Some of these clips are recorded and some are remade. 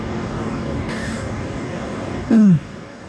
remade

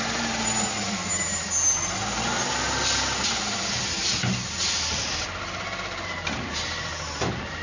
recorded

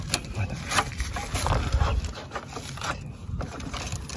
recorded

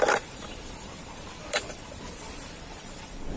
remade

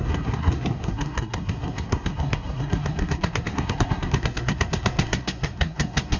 remade